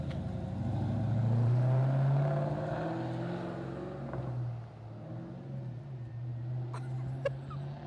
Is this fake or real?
real